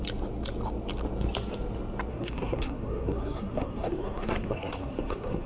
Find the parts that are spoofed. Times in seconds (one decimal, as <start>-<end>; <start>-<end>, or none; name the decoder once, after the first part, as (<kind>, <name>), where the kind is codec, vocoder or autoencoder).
2.1-5.5 (codec, SNAC)